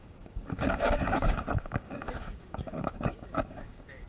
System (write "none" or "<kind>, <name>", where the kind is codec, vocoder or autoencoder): codec, DAC